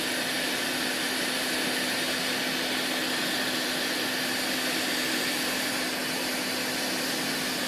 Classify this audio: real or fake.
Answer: real